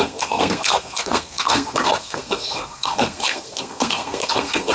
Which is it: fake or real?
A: fake